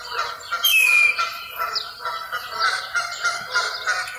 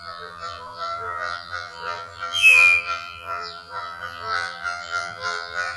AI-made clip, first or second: second